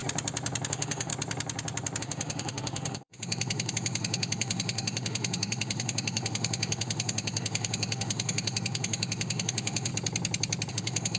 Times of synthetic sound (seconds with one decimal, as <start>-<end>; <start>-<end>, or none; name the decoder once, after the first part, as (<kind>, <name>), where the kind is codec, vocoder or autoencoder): 0.7-1.1 (autoencoder, DAC-VAE); 2.0-9.9; 10.7-11.2